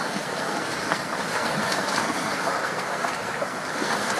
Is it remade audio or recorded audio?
remade